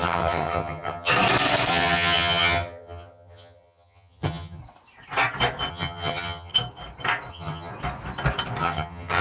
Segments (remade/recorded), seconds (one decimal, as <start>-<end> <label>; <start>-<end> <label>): 0.0-1.1 remade; 1.1-1.7 recorded; 1.7-4.6 remade; 4.6-5.7 recorded; 5.7-6.5 remade; 6.5-7.3 recorded; 7.3-7.7 remade; 7.7-8.6 recorded; 8.6-9.2 remade